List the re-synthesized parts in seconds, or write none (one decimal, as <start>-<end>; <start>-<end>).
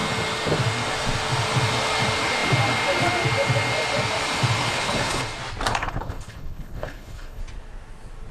4.6-5.2; 5.7-7.4